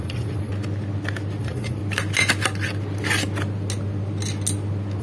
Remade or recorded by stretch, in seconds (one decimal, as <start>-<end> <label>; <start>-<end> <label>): 0.0-0.5 remade; 0.5-1.4 recorded; 1.4-1.8 remade; 1.8-5.0 recorded